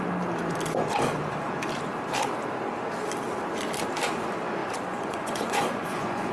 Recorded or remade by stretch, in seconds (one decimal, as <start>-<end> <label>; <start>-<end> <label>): 0.0-4.6 recorded; 4.6-6.3 remade